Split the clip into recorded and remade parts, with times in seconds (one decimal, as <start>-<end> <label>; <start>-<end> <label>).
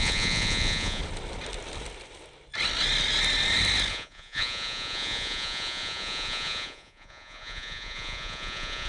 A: 0.0-1.0 remade; 1.0-3.9 recorded; 3.9-8.9 remade